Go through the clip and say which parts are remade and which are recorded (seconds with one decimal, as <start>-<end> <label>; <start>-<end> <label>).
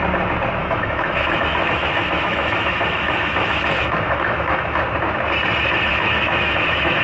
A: 0.0-0.6 recorded; 0.6-4.8 remade; 4.8-5.9 recorded; 5.9-7.0 remade